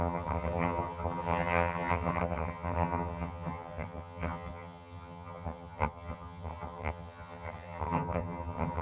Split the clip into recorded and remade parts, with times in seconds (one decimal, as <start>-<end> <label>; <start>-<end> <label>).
0.0-8.8 remade